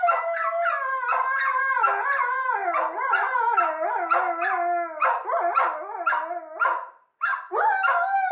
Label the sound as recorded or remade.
recorded